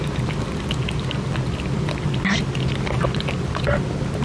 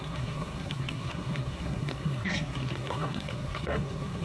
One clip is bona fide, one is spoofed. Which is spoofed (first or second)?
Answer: second